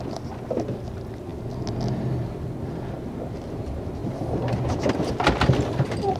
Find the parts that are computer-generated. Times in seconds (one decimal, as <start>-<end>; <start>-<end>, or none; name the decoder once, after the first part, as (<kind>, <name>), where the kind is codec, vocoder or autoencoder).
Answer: none